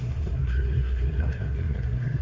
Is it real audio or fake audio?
fake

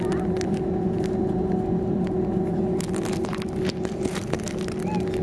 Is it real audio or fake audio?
real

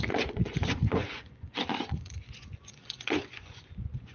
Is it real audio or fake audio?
fake